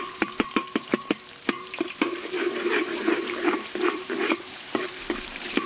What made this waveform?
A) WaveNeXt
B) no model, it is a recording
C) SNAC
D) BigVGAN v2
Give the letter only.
D